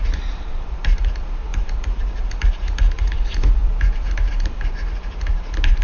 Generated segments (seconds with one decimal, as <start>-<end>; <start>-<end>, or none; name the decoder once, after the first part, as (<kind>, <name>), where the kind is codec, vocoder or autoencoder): 0.0-5.8 (vocoder, BigVGAN v2)